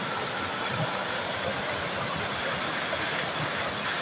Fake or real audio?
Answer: real